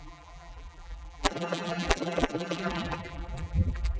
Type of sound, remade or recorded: remade